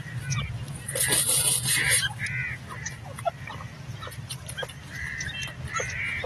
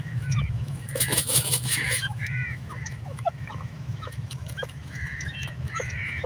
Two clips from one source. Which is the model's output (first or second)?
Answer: second